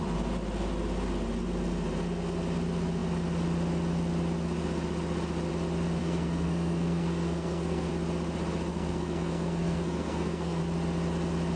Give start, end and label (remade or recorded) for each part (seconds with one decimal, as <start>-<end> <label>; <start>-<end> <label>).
0.0-6.0 recorded; 6.0-7.9 remade; 7.9-8.7 recorded; 8.7-10.6 remade; 10.6-11.6 recorded